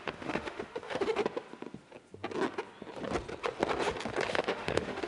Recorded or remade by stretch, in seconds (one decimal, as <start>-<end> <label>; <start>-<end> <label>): 0.0-1.2 remade; 1.2-4.3 recorded; 4.3-5.1 remade